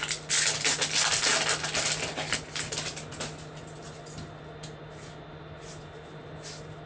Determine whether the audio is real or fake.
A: real